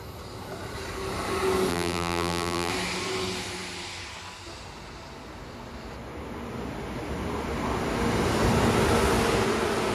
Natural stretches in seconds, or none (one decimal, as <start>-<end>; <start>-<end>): 0.0-1.7; 2.7-9.9